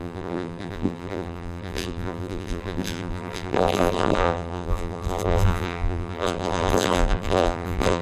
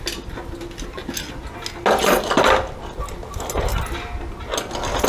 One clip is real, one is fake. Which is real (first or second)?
second